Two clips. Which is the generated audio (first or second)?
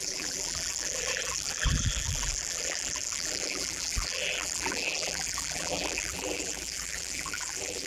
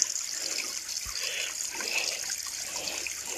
first